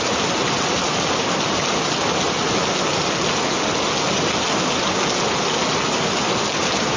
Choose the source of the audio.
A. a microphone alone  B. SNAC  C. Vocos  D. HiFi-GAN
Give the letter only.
A